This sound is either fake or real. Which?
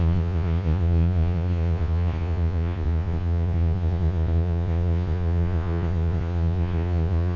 fake